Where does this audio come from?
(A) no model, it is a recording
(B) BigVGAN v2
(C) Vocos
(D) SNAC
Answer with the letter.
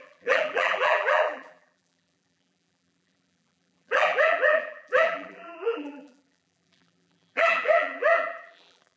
B